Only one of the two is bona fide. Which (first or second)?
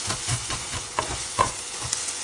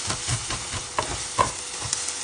second